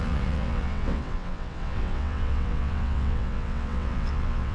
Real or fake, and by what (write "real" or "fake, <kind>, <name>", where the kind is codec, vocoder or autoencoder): fake, vocoder, WaveNeXt